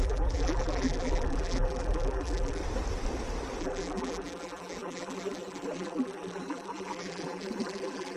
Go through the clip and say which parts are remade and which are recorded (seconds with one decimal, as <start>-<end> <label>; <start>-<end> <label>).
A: 0.0-2.6 remade; 2.6-3.6 recorded; 3.6-8.2 remade